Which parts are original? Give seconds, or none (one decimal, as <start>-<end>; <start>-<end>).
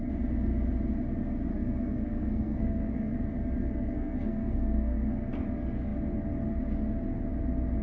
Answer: 0.0-1.5; 3.2-3.6; 5.3-7.8